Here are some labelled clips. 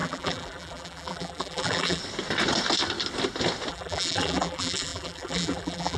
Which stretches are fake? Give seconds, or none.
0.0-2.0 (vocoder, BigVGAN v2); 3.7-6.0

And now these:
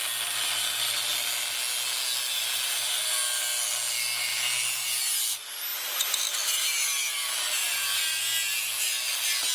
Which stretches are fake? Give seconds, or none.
7.6-8.2 (vocoder, BigVGAN v2)

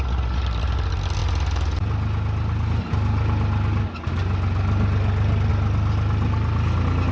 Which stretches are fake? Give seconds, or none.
none

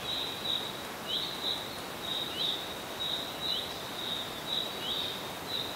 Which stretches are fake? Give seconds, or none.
2.1-2.7 (vocoder, BigVGAN v2)

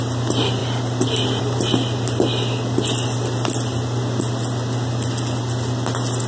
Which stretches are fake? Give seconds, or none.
none

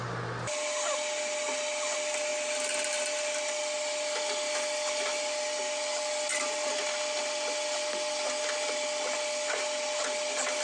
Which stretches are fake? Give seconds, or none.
none

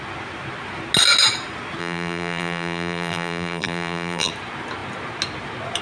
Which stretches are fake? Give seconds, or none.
1.8-4.3 (vocoder, BigVGAN v2)